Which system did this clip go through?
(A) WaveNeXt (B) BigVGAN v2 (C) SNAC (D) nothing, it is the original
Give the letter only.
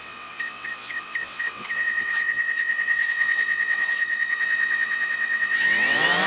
A